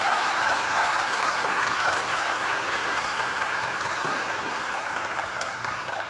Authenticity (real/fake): fake